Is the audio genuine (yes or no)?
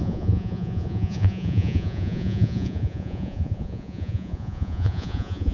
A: no